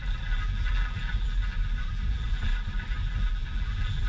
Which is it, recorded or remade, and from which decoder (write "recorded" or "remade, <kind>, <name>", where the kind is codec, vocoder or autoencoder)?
remade, vocoder, BigVGAN v2